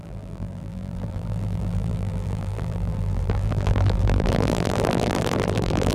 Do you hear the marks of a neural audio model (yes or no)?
yes